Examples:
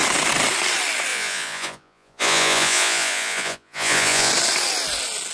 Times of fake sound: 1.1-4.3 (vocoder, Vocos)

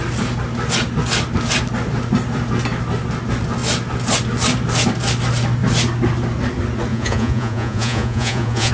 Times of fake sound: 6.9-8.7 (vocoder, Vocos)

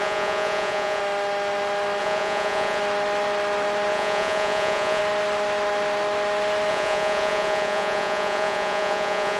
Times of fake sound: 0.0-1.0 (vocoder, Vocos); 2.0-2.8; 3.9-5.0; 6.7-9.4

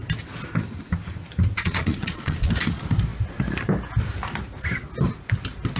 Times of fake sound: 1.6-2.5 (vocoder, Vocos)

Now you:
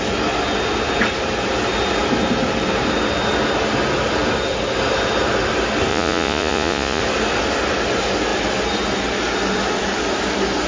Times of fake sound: 5.9-7.0 (vocoder, Vocos)